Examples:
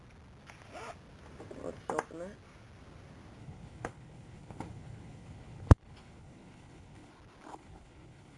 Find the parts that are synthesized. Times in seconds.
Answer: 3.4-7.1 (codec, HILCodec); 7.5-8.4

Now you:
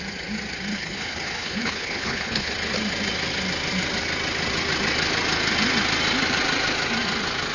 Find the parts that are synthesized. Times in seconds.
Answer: 0.7-2.5 (codec, HILCodec)

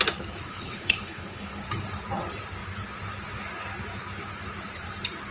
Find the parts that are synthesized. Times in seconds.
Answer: 0.5-1.6 (codec, HILCodec)

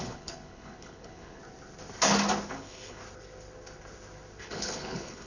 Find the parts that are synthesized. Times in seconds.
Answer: 0.0-1.4 (codec, HILCodec); 2.5-3.0; 4.4-5.3

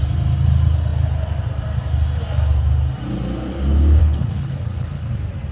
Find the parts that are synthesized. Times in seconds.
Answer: 4.0-5.1 (codec, HILCodec)

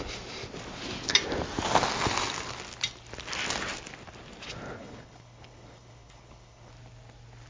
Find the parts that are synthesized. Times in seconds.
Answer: 4.8-6.7 (codec, HILCodec)

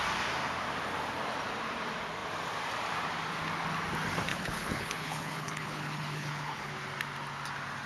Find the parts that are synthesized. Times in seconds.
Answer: 4.3-6.7 (codec, HILCodec)

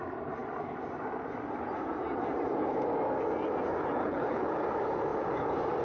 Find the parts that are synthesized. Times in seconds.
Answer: 4.0-4.5 (codec, HILCodec)